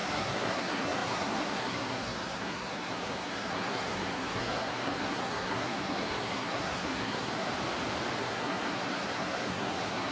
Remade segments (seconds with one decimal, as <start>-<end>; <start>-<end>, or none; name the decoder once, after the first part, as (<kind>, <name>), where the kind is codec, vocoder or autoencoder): 0.0-7.5 (codec, SNAC); 8.2-10.1